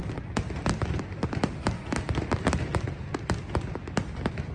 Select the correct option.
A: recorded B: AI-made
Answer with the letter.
A